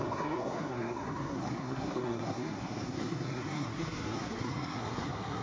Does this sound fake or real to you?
fake